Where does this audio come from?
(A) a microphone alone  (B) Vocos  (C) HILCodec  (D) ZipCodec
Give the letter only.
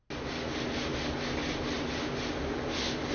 A